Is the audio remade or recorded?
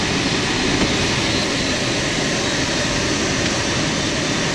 recorded